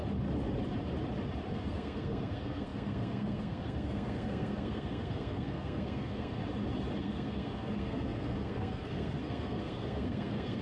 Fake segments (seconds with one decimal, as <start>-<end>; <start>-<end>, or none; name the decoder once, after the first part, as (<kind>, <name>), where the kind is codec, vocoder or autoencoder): 1.5-6.4 (codec, SNAC); 7.0-10.6

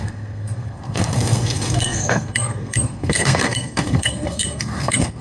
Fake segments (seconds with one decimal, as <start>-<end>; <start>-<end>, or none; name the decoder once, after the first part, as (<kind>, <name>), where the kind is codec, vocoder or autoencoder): 0.0-5.2 (codec, SNAC)